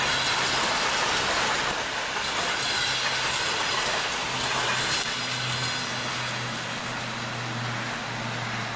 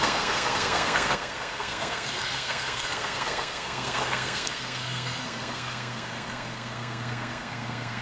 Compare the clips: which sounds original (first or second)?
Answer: first